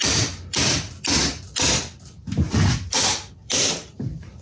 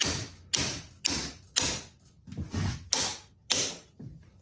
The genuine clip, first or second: second